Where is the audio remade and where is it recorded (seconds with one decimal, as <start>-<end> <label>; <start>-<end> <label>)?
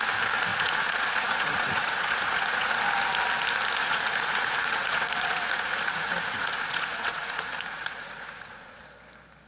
0.0-0.5 recorded; 0.5-2.8 remade; 2.8-3.8 recorded; 3.8-8.8 remade; 8.8-9.5 recorded